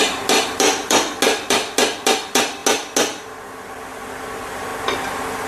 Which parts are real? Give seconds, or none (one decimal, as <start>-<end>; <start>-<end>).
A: 0.0-5.5